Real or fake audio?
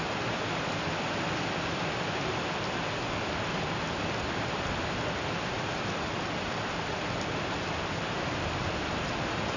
real